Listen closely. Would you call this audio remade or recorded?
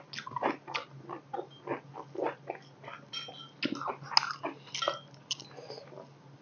recorded